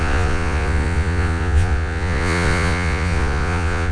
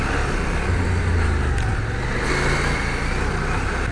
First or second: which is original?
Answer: second